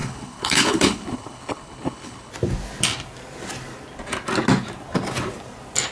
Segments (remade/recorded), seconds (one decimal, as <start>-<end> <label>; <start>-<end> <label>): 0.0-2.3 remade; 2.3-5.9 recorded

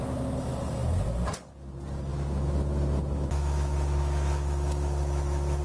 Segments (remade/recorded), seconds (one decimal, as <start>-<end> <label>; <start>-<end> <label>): 0.0-2.1 recorded; 2.1-5.6 remade

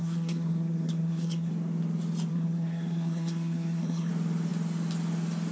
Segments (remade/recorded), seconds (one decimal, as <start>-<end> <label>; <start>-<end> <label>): 0.0-1.5 remade; 1.5-2.3 recorded; 2.3-4.1 remade; 4.1-5.5 recorded

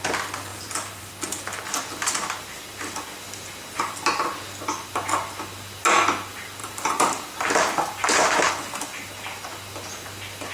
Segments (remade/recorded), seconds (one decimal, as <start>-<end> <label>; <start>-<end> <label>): 0.0-0.5 recorded; 0.5-1.1 remade; 1.1-6.6 recorded; 6.6-8.5 remade; 8.5-10.5 recorded